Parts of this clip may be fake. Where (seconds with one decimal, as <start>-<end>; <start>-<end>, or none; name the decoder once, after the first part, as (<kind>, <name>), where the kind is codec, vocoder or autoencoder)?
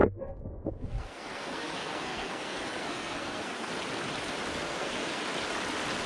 0.0-3.7 (codec, SNAC); 4.5-5.2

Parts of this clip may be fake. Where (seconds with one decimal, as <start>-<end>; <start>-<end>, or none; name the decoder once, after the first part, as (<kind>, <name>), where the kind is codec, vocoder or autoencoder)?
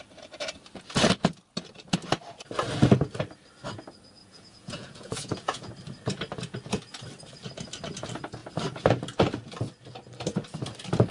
4.2-5.7 (vocoder, Vocos)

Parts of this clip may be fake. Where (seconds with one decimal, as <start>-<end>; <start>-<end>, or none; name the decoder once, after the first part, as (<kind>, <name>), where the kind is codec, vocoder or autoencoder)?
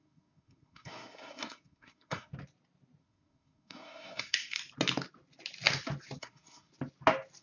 0.0-2.3 (codec, SNAC); 3.0-4.6; 6.2-6.7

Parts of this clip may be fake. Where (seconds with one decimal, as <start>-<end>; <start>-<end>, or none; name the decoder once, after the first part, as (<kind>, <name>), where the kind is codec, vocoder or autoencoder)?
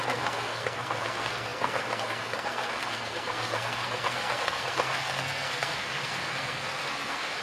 0.0-7.4 (codec, SNAC)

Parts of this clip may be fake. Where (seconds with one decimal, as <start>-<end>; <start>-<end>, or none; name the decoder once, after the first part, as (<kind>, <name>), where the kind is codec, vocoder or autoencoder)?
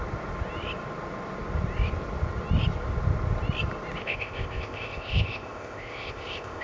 4.0-6.6 (codec, ZipCodec)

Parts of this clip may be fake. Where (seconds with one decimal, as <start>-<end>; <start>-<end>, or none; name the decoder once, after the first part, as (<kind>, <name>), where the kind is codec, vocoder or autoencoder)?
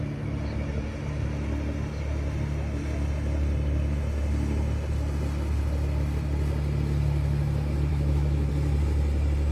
7.9-8.5 (autoencoder, DAC-VAE)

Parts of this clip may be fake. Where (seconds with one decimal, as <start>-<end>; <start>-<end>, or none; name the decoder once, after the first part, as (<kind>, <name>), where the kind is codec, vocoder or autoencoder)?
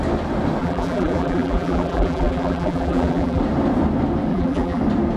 0.6-3.4 (vocoder, BigVGAN v2); 4.3-4.8